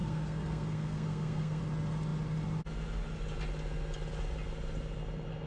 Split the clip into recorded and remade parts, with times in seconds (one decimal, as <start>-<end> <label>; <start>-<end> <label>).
0.0-1.6 remade; 1.6-5.5 recorded